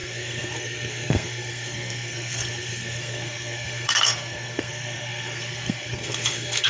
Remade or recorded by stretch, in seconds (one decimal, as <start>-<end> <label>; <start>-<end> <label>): 0.0-6.7 remade